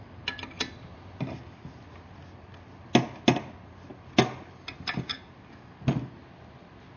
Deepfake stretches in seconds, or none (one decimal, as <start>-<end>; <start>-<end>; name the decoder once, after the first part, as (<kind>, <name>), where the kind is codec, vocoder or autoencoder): none